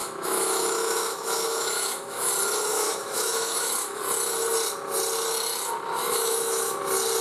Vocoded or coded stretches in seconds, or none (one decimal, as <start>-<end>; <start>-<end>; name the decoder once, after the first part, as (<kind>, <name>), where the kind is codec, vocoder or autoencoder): 0.0-2.3 (autoencoder, DAC-VAE); 2.7-4.0; 6.0-6.8

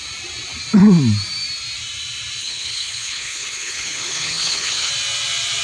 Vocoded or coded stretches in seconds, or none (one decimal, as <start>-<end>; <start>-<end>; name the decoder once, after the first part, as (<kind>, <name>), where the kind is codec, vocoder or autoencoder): 2.4-4.9 (codec, HILCodec)

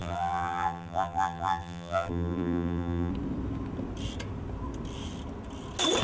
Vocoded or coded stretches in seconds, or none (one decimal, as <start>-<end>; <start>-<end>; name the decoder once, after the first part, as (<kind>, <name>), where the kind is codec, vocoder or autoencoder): 0.0-3.1 (vocoder, BigVGAN v2)

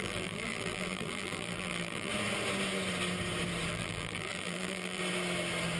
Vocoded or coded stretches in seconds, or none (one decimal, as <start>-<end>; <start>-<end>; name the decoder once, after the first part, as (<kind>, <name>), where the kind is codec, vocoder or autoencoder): 0.0-2.1 (vocoder, BigVGAN v2); 3.7-5.0

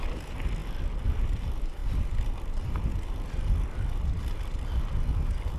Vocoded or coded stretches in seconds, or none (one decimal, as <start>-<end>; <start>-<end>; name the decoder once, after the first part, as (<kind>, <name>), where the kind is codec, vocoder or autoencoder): none